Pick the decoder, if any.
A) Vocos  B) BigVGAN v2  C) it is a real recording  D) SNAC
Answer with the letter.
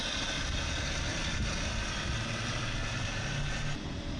C